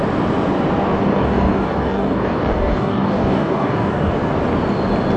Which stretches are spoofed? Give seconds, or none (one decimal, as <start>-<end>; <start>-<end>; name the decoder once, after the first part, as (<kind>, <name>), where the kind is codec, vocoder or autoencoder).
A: 1.0-4.1 (codec, DAC)